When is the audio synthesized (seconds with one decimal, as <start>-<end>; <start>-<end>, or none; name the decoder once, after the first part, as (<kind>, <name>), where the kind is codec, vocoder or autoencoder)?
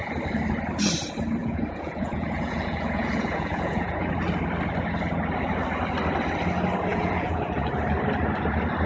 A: 1.4-4.1 (vocoder, Vocos); 6.9-7.7